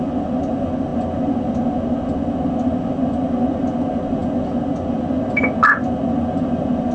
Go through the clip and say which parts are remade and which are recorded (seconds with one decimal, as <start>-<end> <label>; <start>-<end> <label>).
0.0-6.9 recorded